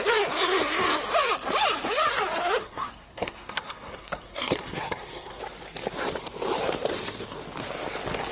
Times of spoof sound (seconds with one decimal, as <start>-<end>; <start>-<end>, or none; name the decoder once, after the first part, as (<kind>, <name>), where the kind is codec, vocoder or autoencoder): 2.6-5.4 (codec, SNAC)